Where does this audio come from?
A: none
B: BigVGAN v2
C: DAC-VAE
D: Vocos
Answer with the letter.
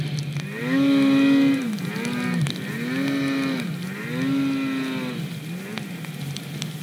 A